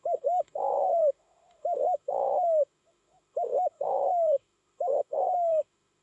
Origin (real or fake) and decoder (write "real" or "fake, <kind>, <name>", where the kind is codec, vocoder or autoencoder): fake, autoencoder, DAC-VAE